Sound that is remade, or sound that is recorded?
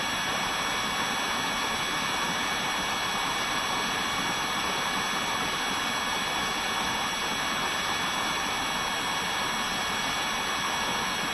recorded